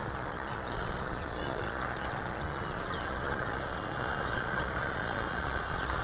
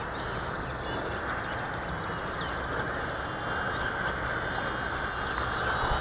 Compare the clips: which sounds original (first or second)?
second